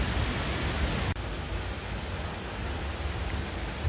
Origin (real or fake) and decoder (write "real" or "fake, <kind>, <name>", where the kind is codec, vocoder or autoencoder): real